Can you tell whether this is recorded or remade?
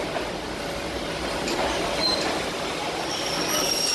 recorded